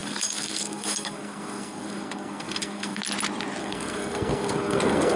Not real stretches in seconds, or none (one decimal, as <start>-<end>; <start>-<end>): 0.0-3.0; 3.6-5.2

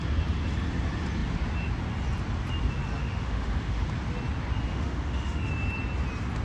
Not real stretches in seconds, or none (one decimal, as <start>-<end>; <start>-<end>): 3.0-3.8; 4.7-5.5

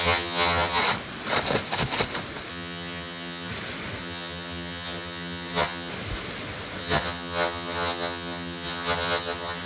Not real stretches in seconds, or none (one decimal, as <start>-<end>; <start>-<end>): 0.0-0.8; 2.5-3.5; 4.0-5.9; 6.8-9.7

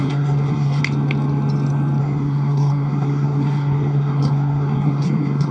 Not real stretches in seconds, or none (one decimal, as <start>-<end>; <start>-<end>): 0.0-0.8; 2.0-5.5

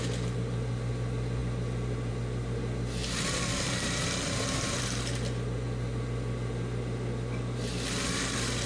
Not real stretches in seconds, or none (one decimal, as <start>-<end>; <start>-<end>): 3.5-4.8

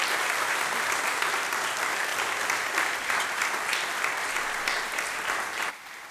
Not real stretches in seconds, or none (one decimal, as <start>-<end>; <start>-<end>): 0.0-1.6; 2.1-2.6; 3.7-6.1

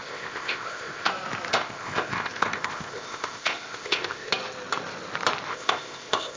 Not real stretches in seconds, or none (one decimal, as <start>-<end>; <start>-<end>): 0.0-1.1; 1.5-4.3; 5.5-6.4

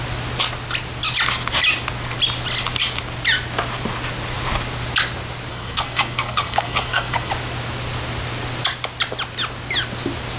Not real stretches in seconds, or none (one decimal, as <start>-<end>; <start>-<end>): 5.5-7.3